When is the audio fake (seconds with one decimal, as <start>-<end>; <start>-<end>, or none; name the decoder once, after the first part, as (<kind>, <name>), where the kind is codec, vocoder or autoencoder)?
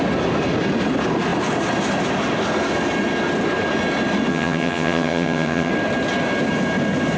4.3-5.7 (vocoder, HiFi-GAN)